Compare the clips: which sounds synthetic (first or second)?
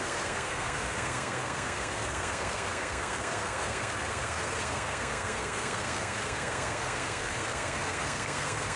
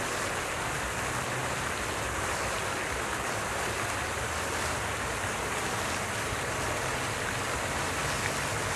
first